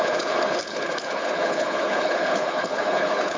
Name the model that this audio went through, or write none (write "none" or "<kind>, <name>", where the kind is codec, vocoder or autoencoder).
codec, HILCodec